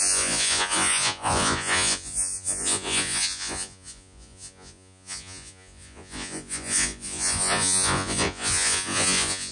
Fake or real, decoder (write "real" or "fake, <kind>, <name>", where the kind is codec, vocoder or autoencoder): fake, vocoder, Vocos